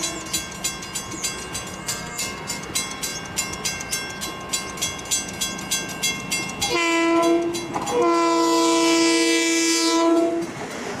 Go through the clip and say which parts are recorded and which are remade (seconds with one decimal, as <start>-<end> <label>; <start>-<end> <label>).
0.0-1.8 recorded; 1.8-2.6 remade; 2.6-11.0 recorded